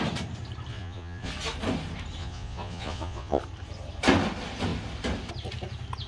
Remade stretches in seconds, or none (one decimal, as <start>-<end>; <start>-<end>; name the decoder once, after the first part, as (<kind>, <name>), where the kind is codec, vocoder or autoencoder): 0.7-1.3 (vocoder, Vocos); 2.2-3.4